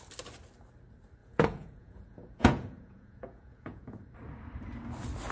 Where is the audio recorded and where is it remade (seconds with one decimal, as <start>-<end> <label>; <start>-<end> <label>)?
0.0-1.2 recorded; 1.2-4.0 remade; 4.0-5.3 recorded